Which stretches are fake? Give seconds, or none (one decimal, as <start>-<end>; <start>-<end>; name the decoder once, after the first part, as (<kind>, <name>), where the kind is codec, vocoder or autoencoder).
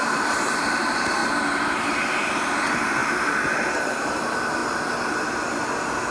0.0-1.2 (vocoder, BigVGAN v2); 2.3-4.6; 5.1-6.1